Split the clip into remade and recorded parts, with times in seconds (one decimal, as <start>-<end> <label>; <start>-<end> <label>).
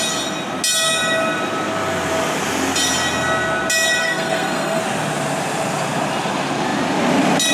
0.0-4.0 recorded; 4.0-4.8 remade; 4.8-7.5 recorded